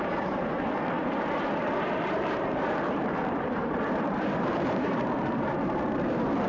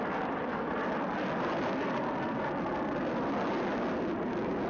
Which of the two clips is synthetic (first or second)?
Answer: first